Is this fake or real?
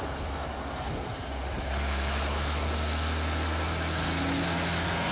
real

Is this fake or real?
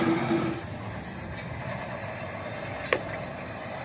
real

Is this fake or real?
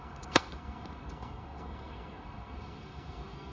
fake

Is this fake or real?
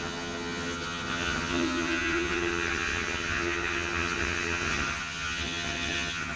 fake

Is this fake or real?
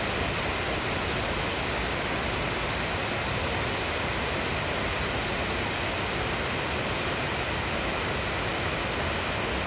real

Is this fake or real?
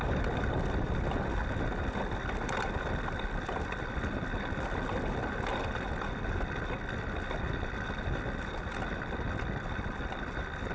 real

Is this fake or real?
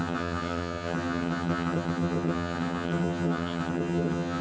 fake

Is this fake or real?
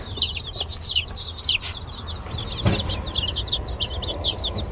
real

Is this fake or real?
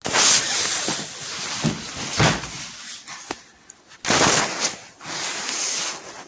real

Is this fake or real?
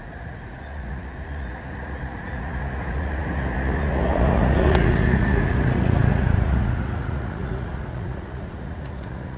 fake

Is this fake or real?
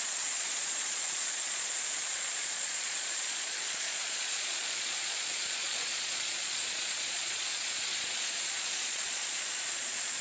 fake